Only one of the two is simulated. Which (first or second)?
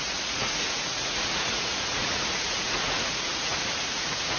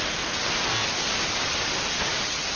first